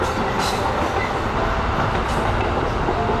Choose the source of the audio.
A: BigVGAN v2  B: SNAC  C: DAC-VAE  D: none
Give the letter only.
D